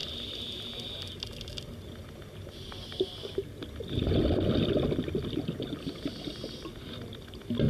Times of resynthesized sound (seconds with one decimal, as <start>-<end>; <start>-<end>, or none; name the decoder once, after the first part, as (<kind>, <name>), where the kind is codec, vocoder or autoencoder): none